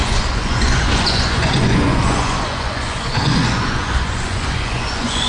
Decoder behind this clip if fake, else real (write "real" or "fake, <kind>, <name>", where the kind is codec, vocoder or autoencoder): fake, vocoder, Vocos